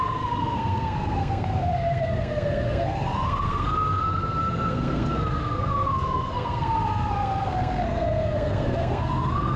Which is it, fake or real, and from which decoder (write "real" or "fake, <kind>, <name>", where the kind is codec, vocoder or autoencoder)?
fake, codec, SNAC